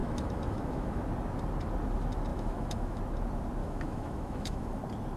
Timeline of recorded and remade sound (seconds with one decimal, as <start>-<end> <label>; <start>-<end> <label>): 0.0-1.0 remade; 1.0-2.3 recorded; 2.3-3.0 remade; 3.0-3.6 recorded; 3.6-4.8 remade; 4.8-5.2 recorded